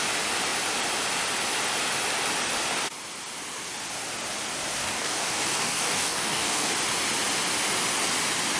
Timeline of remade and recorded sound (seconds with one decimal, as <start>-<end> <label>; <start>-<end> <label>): 0.0-4.8 recorded; 4.8-6.7 remade; 6.7-8.6 recorded